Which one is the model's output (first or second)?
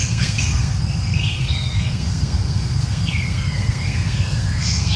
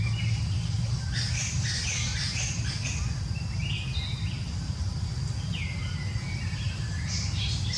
first